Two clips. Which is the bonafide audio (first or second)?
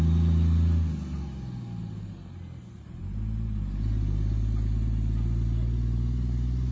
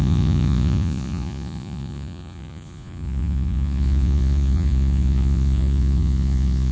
first